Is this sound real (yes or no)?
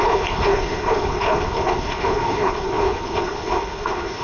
no